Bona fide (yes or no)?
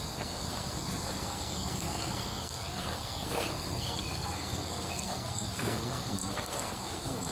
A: no